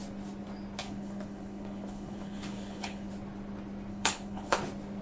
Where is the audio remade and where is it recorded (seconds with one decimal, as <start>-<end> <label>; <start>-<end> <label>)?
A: 0.0-0.8 recorded; 0.8-3.1 remade; 3.1-3.9 recorded; 3.9-4.6 remade; 4.6-5.0 recorded